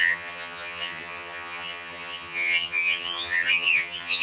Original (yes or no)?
no